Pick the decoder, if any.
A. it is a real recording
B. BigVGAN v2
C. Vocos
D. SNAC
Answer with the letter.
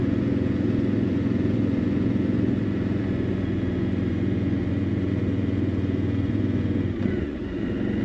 C